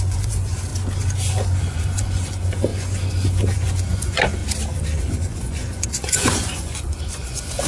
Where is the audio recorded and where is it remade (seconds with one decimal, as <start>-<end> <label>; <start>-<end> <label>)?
0.0-0.7 remade; 0.7-1.3 recorded; 1.3-4.4 remade; 4.4-5.0 recorded; 5.0-7.7 remade